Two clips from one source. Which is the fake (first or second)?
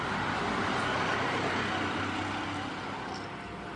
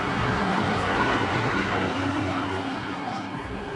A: second